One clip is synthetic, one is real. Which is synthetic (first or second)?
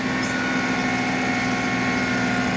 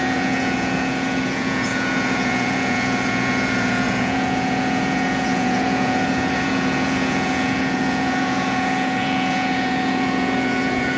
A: second